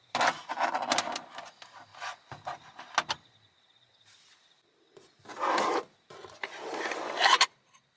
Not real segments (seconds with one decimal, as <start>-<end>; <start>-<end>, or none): 0.0-1.9; 3.1-8.0